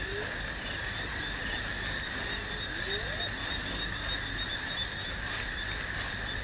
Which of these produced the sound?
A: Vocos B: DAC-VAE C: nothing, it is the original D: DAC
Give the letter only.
C